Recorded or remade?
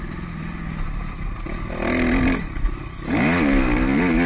recorded